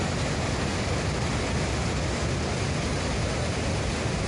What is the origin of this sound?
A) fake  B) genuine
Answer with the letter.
B